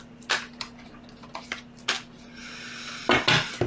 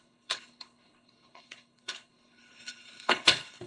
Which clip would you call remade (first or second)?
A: second